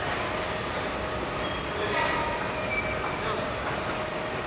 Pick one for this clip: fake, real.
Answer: real